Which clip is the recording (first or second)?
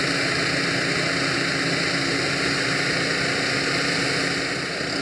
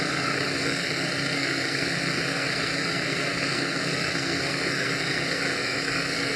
first